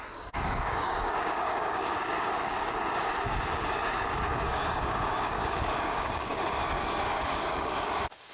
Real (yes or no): no